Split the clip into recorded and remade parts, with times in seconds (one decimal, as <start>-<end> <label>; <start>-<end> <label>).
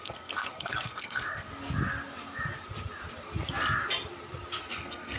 0.0-1.5 remade; 1.5-4.6 recorded; 4.6-5.2 remade